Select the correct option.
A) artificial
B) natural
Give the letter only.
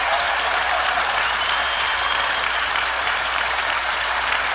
A